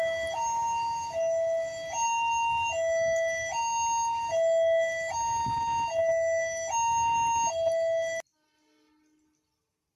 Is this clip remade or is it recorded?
recorded